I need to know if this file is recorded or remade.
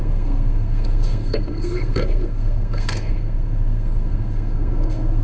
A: remade